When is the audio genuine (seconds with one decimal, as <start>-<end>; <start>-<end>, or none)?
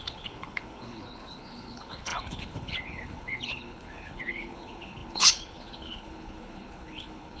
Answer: none